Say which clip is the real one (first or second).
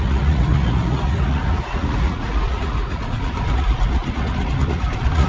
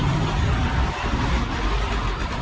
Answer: second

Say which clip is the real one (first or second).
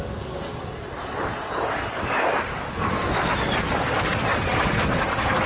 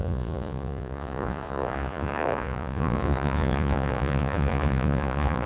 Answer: first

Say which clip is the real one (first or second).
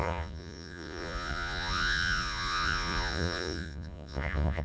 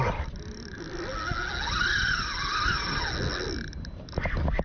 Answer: second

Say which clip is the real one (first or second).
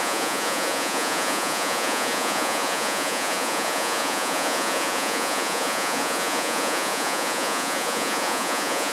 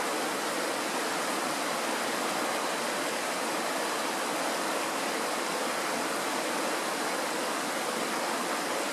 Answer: second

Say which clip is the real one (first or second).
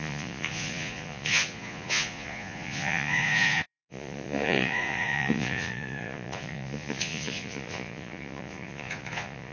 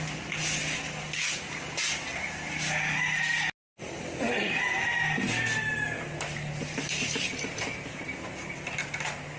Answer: second